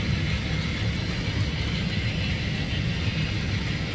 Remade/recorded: recorded